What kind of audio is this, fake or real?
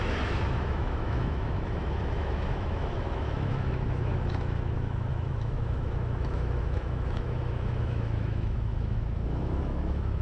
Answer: fake